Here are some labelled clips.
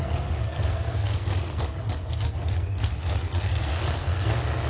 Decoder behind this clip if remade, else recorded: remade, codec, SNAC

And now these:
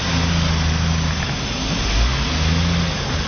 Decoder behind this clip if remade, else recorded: recorded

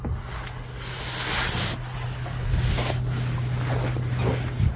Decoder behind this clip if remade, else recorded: recorded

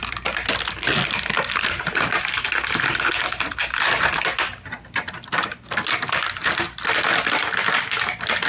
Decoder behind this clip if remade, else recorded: recorded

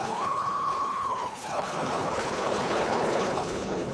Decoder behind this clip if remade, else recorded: remade, codec, HILCodec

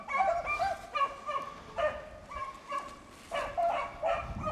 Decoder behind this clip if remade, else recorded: recorded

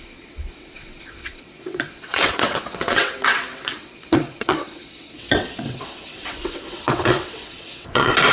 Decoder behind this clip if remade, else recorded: remade, vocoder, WaveNeXt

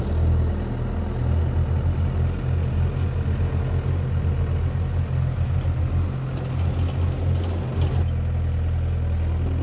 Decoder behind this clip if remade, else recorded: recorded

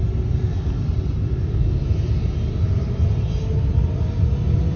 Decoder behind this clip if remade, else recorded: recorded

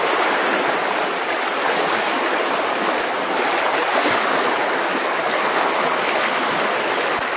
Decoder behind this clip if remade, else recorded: recorded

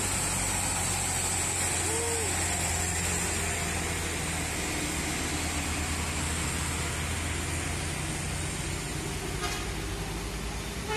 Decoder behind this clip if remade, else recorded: recorded